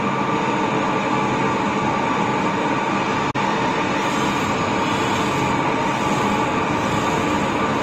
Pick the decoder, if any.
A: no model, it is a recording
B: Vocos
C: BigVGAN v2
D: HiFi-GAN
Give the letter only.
A